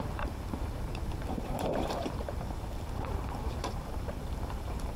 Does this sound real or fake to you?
fake